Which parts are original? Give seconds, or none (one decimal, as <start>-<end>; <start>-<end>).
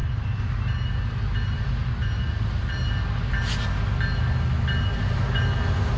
0.0-6.0